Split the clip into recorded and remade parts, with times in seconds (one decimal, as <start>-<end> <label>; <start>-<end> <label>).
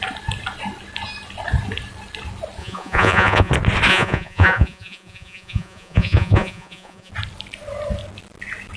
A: 0.0-2.6 recorded; 2.6-3.5 remade; 3.5-3.9 recorded; 3.9-7.1 remade; 7.1-8.8 recorded